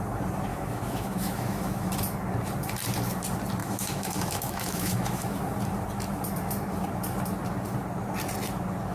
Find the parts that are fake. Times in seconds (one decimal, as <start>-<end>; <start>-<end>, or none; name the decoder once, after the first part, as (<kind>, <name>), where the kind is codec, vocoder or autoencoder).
0.5-1.9 (autoencoder, DAC-VAE); 3.6-5.4

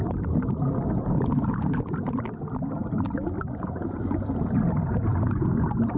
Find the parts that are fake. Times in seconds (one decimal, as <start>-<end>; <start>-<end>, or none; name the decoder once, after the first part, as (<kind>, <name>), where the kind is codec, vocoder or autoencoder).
none

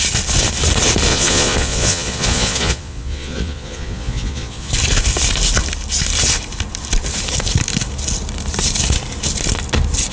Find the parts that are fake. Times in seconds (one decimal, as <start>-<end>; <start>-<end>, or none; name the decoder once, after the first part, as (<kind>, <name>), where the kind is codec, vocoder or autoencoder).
1.1-4.7 (vocoder, Vocos)

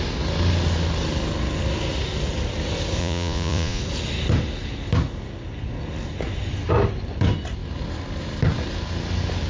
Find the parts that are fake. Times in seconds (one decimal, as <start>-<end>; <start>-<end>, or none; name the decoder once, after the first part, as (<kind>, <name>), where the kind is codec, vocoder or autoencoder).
3.0-3.8 (vocoder, Vocos)

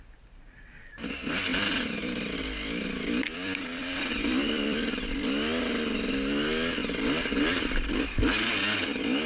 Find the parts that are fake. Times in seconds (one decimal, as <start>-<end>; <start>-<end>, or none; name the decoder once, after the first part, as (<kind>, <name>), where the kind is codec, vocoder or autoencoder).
1.5-5.1 (vocoder, BigVGAN v2)

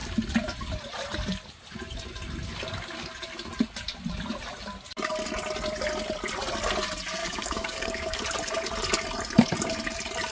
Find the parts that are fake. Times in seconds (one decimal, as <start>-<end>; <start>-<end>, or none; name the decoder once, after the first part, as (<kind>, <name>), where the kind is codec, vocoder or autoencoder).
7.2-8.2 (codec, DAC)